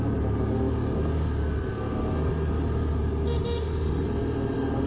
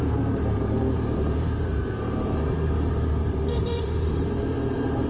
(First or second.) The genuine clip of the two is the first